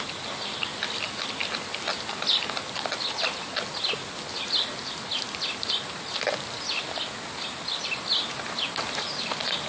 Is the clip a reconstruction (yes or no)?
no